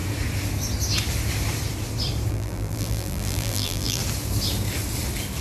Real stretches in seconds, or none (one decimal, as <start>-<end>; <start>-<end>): 0.0-2.3; 4.0-5.4